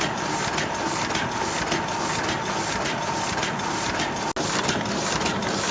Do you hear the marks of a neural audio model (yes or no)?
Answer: no